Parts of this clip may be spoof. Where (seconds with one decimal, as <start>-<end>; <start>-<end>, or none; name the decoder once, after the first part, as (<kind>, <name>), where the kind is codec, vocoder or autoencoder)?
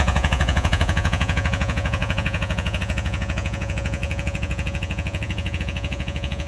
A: 0.0-6.5 (vocoder, Vocos)